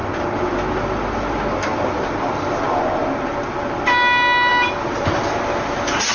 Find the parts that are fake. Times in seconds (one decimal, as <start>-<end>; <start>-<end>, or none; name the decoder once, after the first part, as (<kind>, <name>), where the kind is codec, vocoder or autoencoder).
none